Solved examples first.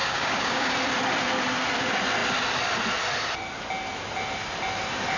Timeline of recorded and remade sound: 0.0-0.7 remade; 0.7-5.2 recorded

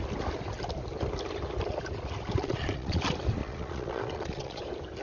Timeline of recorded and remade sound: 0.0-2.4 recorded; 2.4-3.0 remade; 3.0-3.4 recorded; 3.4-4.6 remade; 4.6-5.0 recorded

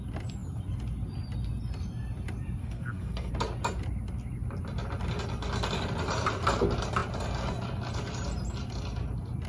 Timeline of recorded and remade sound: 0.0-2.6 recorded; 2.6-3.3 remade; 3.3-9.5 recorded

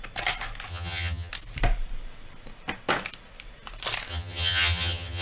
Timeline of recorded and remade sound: 0.0-0.7 recorded; 0.7-1.3 remade; 1.3-4.1 recorded; 4.1-5.2 remade

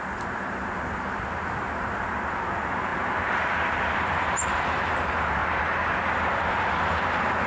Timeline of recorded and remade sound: 0.0-5.4 remade; 5.4-6.1 recorded; 6.1-7.5 remade